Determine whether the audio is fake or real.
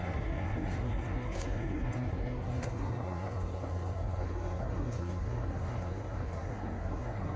fake